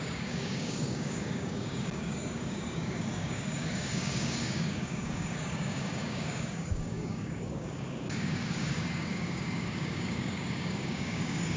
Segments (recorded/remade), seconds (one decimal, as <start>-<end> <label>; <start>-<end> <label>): 0.0-11.6 remade